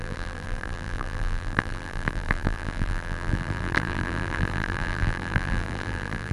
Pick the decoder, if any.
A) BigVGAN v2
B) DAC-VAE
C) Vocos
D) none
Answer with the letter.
A